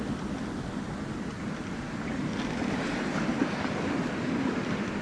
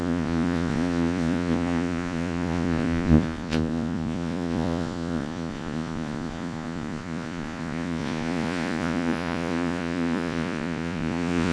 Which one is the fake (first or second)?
second